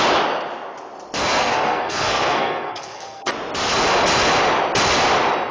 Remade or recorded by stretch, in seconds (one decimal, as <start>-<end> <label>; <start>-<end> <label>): 0.0-1.4 recorded; 1.4-3.3 remade; 3.3-5.5 recorded